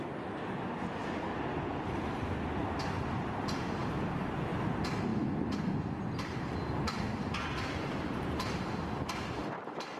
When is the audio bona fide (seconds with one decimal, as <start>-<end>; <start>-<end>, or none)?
0.0-10.0